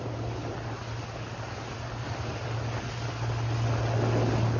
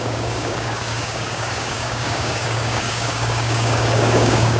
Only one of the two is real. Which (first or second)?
first